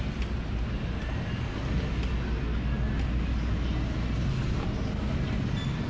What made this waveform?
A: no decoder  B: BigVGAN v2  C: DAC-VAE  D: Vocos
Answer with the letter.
A